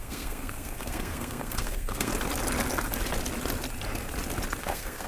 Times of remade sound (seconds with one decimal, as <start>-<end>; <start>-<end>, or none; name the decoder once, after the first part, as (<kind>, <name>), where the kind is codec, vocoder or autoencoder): 0.0-2.1 (codec, SNAC); 4.6-5.1